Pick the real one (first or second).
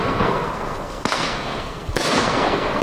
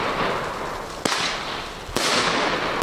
second